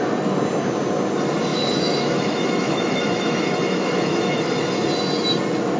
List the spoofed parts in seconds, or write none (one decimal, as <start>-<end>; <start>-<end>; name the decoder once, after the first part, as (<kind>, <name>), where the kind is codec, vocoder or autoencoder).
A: 1.5-4.5 (autoencoder, DAC-VAE)